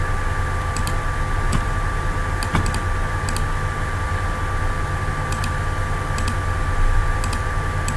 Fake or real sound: real